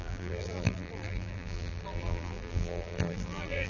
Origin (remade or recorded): remade